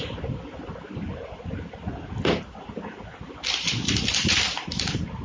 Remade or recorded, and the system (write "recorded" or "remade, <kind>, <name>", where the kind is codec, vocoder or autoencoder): recorded